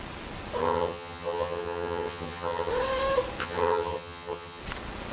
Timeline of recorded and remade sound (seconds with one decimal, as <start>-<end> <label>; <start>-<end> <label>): 0.0-0.6 recorded; 0.6-2.7 remade; 2.7-3.4 recorded; 3.4-4.6 remade; 4.6-5.1 recorded